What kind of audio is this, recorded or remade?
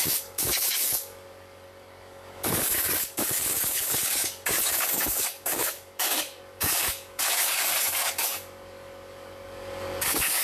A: remade